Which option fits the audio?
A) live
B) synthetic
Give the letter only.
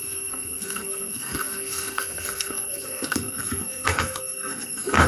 B